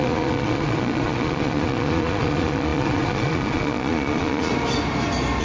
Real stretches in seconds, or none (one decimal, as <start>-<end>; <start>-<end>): 4.5-5.4